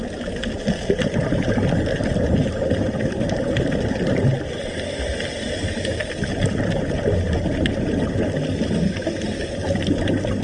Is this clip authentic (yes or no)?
yes